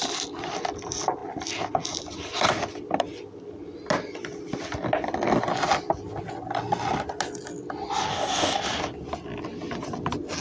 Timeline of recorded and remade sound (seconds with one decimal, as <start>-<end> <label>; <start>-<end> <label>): 0.0-8.1 recorded; 8.1-8.6 remade; 8.6-10.4 recorded